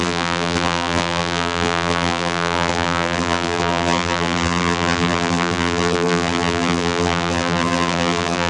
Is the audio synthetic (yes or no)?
yes